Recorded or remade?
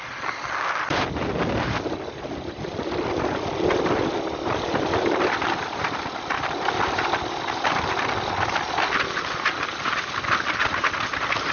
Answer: recorded